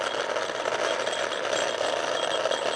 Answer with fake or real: real